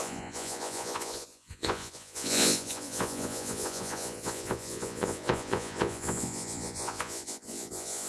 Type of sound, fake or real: fake